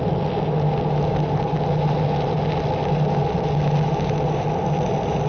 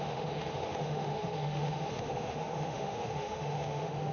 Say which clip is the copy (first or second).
second